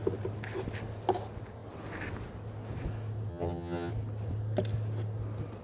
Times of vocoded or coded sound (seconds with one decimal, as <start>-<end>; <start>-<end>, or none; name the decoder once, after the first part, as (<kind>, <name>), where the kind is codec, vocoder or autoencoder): 3.3-3.9 (vocoder, HiFi-GAN)